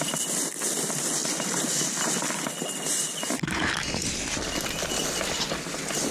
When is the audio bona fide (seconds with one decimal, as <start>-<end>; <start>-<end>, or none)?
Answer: 0.0-6.1